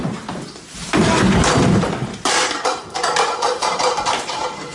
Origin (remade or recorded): remade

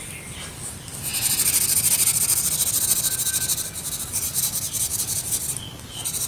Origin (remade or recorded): recorded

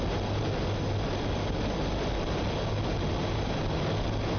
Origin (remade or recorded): recorded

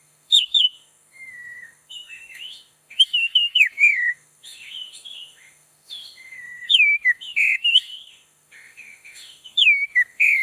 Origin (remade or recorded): remade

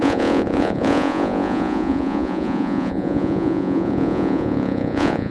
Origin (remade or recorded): remade